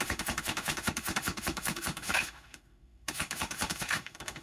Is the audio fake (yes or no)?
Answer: yes